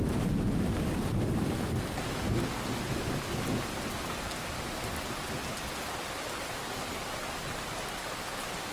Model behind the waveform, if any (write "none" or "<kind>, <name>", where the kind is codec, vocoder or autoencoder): none